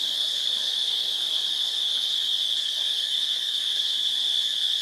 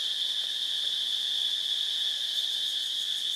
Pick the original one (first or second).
second